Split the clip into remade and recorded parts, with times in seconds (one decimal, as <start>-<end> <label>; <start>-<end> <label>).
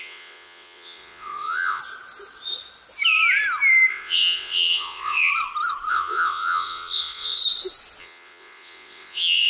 0.0-1.8 remade; 1.8-3.9 recorded; 3.9-5.3 remade; 5.3-5.9 recorded; 5.9-7.4 remade; 7.4-8.0 recorded; 8.0-9.5 remade